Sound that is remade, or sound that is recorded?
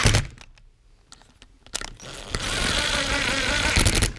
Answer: recorded